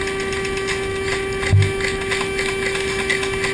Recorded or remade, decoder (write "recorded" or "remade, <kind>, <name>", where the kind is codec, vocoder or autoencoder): recorded